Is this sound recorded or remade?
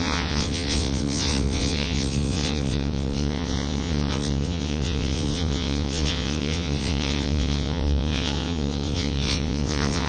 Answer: remade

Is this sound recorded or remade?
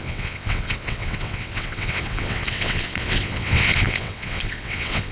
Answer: remade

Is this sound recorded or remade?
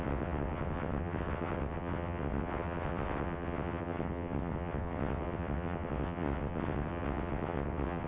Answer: remade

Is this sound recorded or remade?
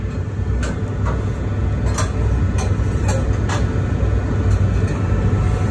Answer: recorded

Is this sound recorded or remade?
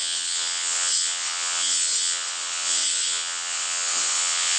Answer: remade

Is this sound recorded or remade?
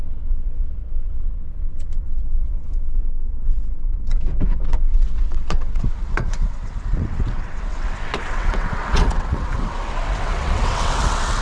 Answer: remade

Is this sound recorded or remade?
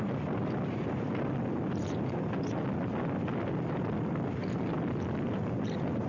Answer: recorded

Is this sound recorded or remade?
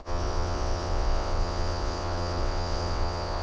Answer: remade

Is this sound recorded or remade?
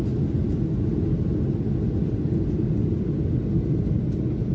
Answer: recorded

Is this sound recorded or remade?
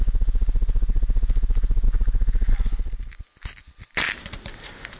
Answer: recorded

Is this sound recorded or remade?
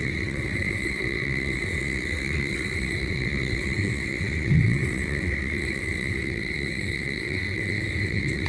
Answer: remade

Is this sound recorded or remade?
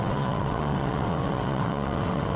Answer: remade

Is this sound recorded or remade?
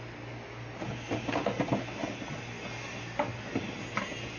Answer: recorded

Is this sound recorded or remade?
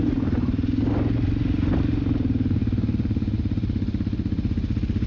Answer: recorded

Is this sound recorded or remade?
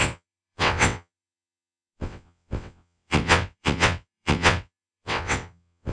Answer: remade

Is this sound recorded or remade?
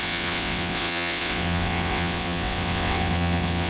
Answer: remade